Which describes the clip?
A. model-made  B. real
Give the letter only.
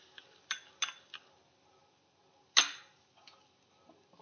B